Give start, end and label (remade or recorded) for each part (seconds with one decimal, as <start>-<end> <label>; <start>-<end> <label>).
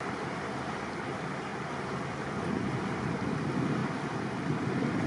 0.0-5.1 recorded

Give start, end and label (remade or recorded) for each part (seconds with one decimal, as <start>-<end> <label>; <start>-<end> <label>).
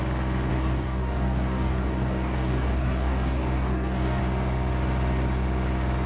0.0-0.5 recorded; 0.5-4.2 remade; 4.2-6.1 recorded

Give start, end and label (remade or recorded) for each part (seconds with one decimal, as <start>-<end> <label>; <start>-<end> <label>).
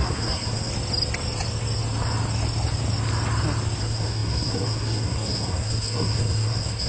0.0-0.7 remade; 0.7-3.8 recorded; 3.8-6.9 remade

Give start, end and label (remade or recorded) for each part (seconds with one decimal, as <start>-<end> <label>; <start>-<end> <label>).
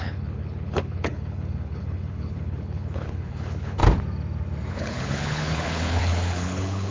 0.0-3.8 remade; 3.8-4.7 recorded; 4.7-6.9 remade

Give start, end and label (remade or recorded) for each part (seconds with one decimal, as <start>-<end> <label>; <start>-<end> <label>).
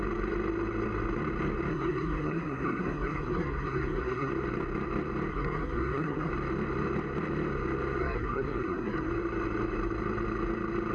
0.0-1.7 recorded; 1.7-4.3 remade; 4.3-5.3 recorded; 5.3-6.3 remade; 6.3-8.0 recorded; 8.0-9.1 remade; 9.1-10.9 recorded